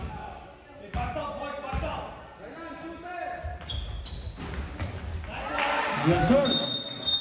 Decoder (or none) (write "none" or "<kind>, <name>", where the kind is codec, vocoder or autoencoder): none